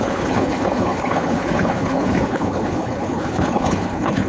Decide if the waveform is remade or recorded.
remade